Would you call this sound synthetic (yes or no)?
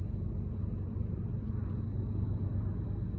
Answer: no